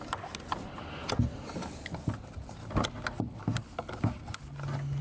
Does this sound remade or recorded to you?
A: recorded